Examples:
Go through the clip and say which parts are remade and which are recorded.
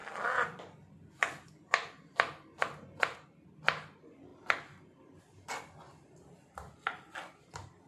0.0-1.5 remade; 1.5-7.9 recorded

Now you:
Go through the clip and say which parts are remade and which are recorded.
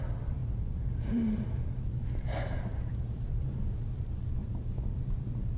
0.0-0.4 recorded; 0.4-3.8 remade; 3.8-4.4 recorded; 4.4-5.6 remade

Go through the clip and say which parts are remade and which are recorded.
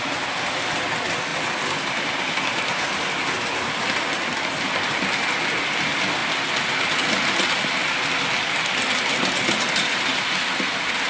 0.0-1.3 recorded; 1.3-2.1 remade; 2.1-11.1 recorded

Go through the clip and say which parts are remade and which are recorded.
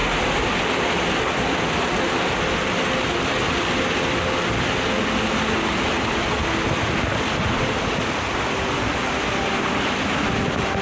0.0-10.8 recorded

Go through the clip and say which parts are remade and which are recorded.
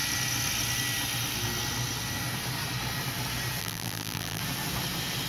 0.0-3.6 recorded; 3.6-4.4 remade; 4.4-5.3 recorded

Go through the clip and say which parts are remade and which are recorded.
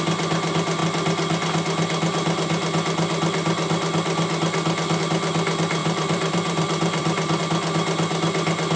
0.0-5.8 recorded; 5.8-7.4 remade; 7.4-8.8 recorded